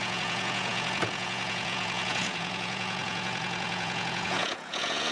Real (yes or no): no